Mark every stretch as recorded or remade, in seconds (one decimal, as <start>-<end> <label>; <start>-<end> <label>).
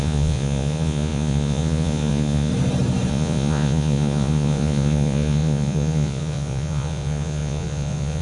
0.0-2.5 remade; 2.5-3.1 recorded; 3.1-8.2 remade